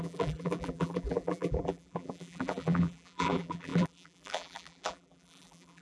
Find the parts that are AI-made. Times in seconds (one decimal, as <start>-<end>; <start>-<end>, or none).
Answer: 0.0-5.8